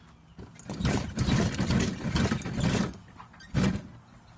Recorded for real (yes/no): yes